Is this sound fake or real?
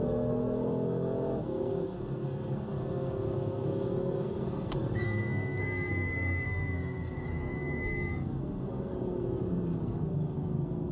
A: fake